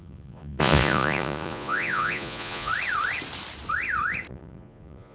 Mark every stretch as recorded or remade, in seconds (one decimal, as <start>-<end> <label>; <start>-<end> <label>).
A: 0.0-2.7 remade; 2.7-4.3 recorded; 4.3-5.1 remade